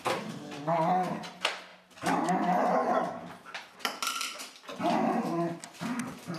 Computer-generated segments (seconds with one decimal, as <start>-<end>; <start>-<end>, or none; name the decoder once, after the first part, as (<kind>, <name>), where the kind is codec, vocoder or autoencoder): none

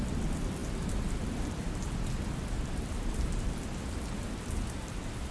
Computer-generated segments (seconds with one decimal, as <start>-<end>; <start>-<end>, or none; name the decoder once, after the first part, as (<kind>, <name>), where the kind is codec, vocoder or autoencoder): none

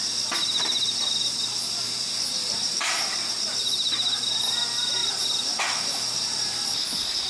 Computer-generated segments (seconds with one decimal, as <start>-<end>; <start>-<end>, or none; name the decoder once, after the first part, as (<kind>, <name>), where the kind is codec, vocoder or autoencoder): 2.4-3.0 (vocoder, BigVGAN v2); 5.0-7.3

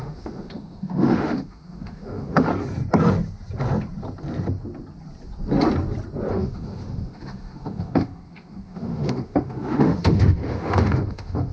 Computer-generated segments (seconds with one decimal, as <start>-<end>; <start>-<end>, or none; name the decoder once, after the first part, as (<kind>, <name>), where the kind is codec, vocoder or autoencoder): 0.0-2.5 (autoencoder, DAC-VAE); 6.3-11.5

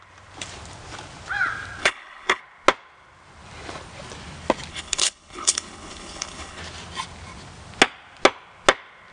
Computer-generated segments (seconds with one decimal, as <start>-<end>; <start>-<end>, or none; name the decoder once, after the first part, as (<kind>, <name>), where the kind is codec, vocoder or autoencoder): 1.8-2.4 (codec, HILCodec); 4.7-6.6